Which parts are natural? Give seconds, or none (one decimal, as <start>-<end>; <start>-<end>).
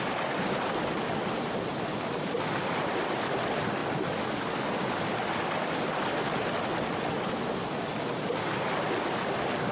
0.0-9.7